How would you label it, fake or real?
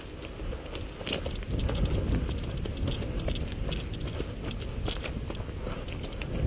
real